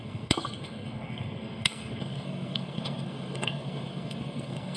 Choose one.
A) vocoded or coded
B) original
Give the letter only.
A